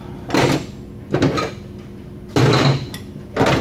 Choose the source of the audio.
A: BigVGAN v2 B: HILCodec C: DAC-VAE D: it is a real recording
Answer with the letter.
D